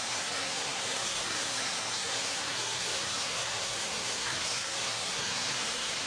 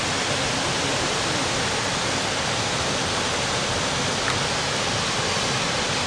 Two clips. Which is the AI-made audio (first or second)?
first